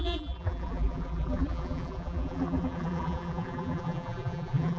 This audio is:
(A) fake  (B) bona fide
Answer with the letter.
A